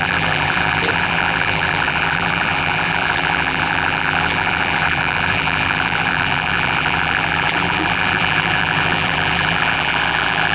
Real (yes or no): no